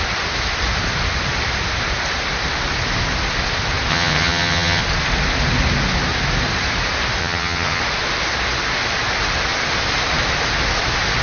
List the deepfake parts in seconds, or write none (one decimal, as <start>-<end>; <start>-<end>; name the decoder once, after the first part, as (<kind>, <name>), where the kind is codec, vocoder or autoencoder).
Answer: 3.9-4.8 (vocoder, HiFi-GAN); 7.2-7.8